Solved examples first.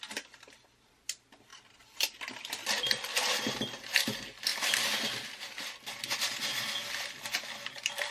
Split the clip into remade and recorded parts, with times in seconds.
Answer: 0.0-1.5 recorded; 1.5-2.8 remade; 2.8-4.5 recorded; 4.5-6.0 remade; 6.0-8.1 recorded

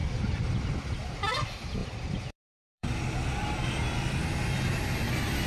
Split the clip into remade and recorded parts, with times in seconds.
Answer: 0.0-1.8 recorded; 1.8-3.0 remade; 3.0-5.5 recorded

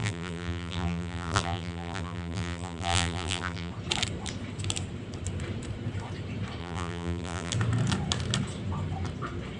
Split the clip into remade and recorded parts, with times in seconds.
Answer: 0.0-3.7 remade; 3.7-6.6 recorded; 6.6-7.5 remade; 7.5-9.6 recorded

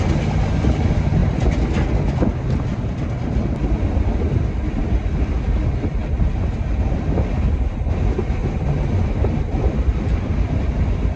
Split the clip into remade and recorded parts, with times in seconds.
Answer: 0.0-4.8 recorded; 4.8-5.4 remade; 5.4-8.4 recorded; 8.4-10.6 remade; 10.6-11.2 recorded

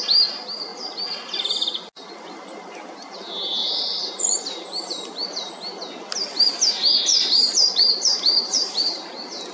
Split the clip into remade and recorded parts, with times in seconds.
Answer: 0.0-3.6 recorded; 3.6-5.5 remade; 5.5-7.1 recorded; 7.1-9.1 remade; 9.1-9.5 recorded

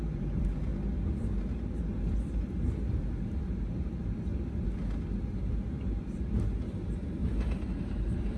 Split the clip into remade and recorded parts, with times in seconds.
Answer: 0.0-0.7 remade; 0.7-2.3 recorded; 2.3-4.3 remade; 4.3-5.8 recorded; 5.8-7.2 remade; 7.2-7.8 recorded; 7.8-8.4 remade

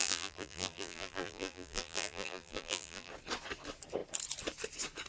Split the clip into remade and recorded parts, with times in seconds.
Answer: 0.0-3.1 remade; 3.1-5.1 recorded